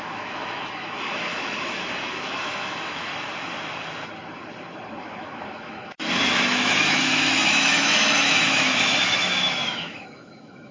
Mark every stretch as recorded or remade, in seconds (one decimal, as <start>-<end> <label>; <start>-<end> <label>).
0.0-3.1 remade; 3.1-5.0 recorded; 5.0-10.7 remade